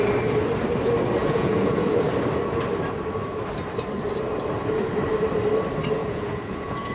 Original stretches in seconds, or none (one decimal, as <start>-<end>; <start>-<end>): 0.0-1.2; 2.1-6.0